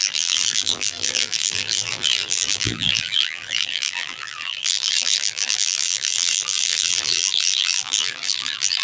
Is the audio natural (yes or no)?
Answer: no